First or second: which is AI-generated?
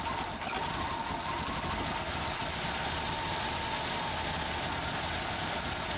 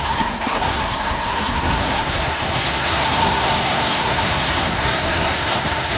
second